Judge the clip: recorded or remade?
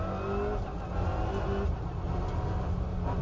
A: recorded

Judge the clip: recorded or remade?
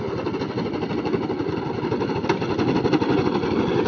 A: recorded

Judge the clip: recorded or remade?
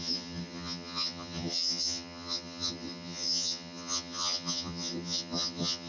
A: remade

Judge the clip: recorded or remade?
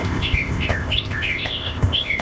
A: remade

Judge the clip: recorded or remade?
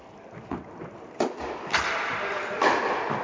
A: recorded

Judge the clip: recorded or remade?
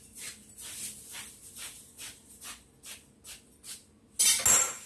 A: recorded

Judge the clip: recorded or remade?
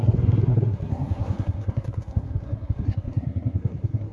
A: remade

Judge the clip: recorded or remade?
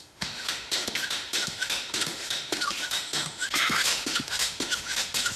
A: remade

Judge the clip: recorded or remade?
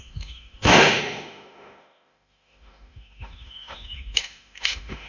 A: remade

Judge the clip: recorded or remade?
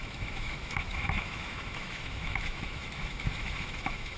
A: remade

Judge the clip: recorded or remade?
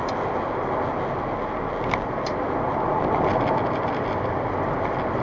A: recorded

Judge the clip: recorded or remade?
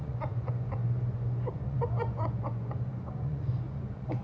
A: remade